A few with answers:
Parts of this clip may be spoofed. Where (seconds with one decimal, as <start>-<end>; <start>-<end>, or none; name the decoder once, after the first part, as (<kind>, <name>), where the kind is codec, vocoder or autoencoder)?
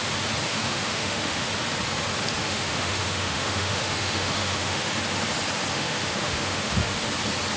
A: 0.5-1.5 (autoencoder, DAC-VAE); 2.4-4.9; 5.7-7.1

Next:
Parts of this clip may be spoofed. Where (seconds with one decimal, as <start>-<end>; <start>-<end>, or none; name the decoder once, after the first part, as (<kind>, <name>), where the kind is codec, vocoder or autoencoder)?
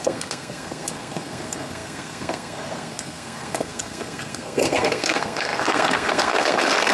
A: 0.0-6.9 (codec, SNAC)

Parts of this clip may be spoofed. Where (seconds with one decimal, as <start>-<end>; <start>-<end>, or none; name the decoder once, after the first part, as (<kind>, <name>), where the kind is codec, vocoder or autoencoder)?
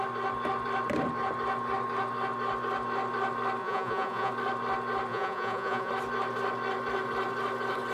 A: 3.6-4.3 (vocoder, Vocos); 5.1-5.9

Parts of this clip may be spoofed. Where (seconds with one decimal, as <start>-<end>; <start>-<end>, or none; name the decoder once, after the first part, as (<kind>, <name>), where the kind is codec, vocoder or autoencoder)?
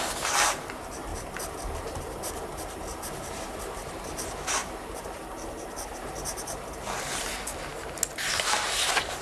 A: none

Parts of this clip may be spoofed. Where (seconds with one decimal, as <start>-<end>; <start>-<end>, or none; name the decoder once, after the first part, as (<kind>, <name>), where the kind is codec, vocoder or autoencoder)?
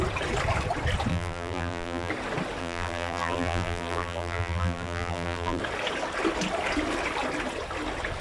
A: 1.1-2.1 (vocoder, BigVGAN v2); 2.6-5.6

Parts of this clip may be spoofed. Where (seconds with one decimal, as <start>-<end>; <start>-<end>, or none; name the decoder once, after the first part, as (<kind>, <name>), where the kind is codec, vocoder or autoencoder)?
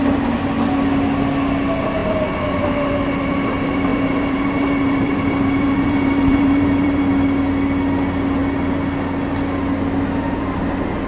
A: 3.9-7.0 (vocoder, BigVGAN v2)